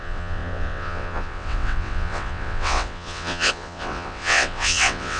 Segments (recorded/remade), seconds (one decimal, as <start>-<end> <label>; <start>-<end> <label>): 0.0-5.2 remade